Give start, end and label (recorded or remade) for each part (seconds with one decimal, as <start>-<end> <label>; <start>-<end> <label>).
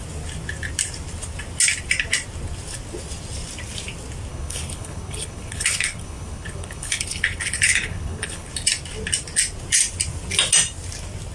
0.0-4.3 recorded; 4.3-8.5 remade; 8.5-11.3 recorded